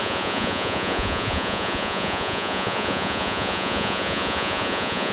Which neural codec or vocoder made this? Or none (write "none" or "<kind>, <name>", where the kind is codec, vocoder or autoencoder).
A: vocoder, Vocos